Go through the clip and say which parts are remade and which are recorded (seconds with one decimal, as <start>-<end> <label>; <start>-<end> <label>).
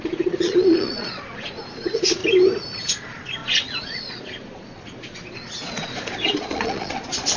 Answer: 0.0-2.2 remade; 2.2-2.9 recorded; 2.9-7.4 remade